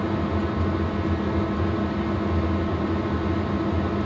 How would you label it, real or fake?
real